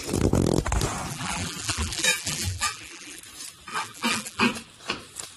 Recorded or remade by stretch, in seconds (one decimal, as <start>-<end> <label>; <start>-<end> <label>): 0.0-1.1 recorded; 1.1-3.2 remade; 3.2-3.7 recorded; 3.7-4.5 remade; 4.5-5.4 recorded